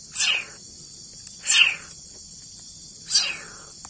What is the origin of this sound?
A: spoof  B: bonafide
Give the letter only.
B